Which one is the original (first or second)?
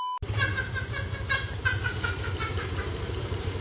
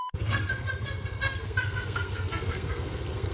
first